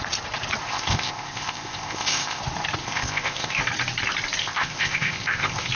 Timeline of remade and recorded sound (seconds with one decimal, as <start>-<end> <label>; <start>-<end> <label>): 0.0-0.6 recorded; 0.6-2.4 remade; 2.4-2.8 recorded; 2.8-3.6 remade; 3.6-4.4 recorded; 4.4-5.7 remade